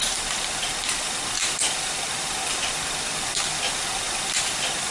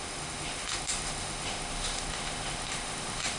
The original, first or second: first